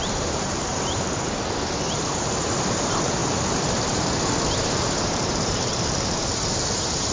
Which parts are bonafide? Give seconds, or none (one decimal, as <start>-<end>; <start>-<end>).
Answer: none